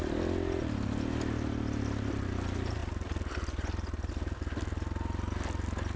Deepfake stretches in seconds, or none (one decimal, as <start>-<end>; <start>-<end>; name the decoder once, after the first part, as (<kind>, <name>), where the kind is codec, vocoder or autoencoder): none